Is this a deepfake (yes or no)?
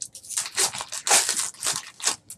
no